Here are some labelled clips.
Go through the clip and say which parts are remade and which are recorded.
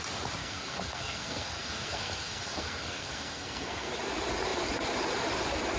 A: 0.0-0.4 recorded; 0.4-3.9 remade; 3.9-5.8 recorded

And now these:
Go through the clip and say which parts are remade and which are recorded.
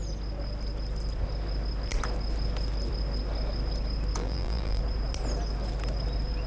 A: 0.0-4.2 recorded; 4.2-4.8 remade; 4.8-6.5 recorded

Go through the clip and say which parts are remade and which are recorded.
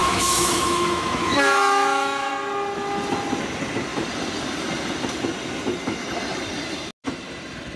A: 0.0-2.3 remade; 2.3-7.8 recorded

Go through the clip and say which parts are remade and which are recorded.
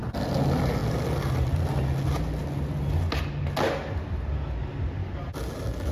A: 0.0-5.9 recorded